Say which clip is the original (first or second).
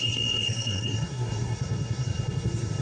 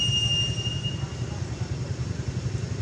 second